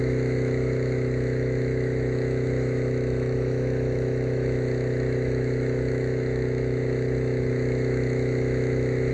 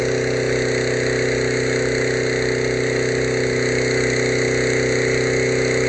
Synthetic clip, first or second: first